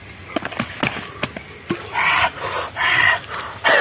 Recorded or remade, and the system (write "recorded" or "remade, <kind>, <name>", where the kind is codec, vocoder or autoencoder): recorded